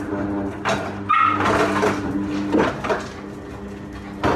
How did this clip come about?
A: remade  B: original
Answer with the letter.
B